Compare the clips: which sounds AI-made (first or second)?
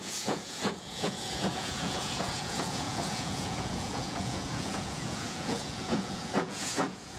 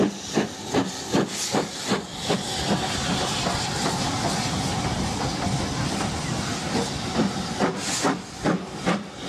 first